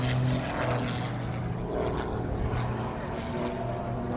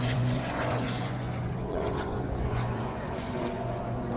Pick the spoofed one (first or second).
second